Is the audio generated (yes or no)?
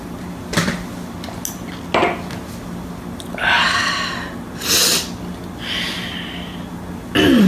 no